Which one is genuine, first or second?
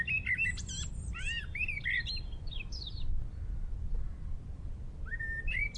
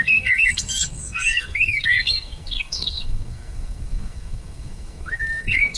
first